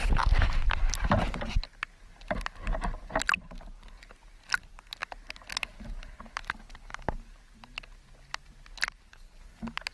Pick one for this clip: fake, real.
real